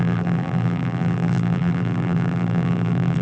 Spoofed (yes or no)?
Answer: yes